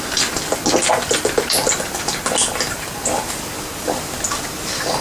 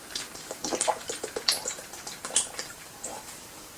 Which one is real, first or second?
first